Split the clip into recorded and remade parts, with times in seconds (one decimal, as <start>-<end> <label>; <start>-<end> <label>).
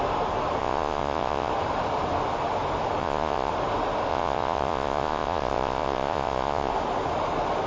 0.0-0.6 recorded; 0.6-1.5 remade; 1.5-3.0 recorded; 3.0-3.5 remade; 3.5-4.1 recorded; 4.1-6.7 remade; 6.7-7.7 recorded